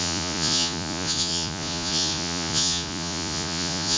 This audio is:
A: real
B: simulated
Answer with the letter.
B